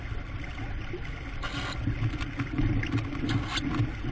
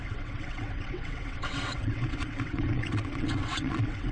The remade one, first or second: second